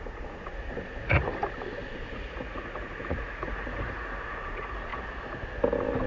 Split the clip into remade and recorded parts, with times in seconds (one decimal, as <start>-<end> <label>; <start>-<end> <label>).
0.0-1.4 remade; 1.4-1.9 recorded; 1.9-4.9 remade; 4.9-6.1 recorded